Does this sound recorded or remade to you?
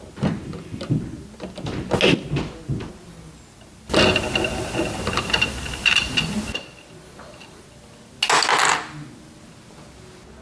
recorded